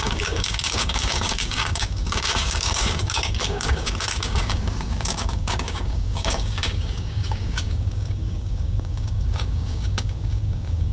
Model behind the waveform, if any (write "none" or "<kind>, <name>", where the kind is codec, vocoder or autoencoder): codec, DAC